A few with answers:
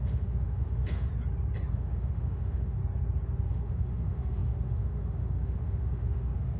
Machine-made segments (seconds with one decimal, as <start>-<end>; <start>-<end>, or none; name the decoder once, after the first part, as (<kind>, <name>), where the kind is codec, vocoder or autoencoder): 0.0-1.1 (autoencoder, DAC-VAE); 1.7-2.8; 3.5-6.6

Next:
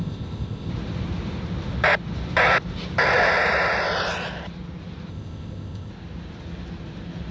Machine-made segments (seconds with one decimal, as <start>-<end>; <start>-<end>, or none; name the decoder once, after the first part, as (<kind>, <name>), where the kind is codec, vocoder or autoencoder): 0.0-0.7 (codec, ZipCodec); 5.1-5.9

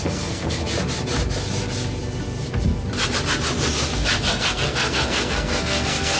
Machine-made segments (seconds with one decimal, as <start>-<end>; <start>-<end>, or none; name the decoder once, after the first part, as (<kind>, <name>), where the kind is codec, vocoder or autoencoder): 0.0-0.6 (codec, SNAC); 4.3-6.2